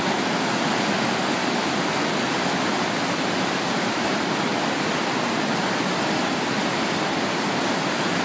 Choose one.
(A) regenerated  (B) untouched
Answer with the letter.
A